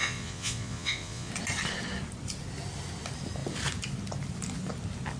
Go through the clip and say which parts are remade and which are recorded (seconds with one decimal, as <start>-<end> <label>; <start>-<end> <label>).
0.0-1.3 remade; 1.3-5.2 recorded